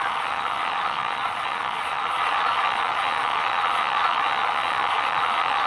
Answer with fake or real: fake